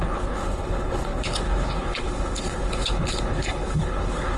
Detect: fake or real fake